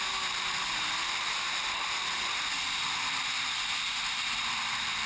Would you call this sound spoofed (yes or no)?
no